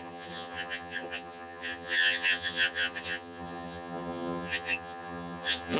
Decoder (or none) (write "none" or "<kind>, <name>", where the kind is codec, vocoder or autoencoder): vocoder, HiFi-GAN